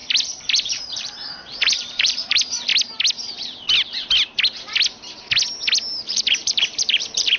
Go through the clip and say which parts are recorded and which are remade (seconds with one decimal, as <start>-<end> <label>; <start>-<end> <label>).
0.0-2.7 remade; 2.7-6.0 recorded; 6.0-7.4 remade